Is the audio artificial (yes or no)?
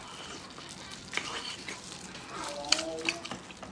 no